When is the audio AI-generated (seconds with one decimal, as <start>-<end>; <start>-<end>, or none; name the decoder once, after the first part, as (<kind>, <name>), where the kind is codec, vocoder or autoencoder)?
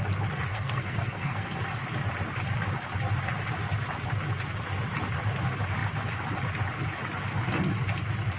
0.5-1.6 (codec, SNAC)